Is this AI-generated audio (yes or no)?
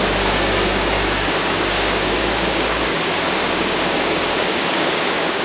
yes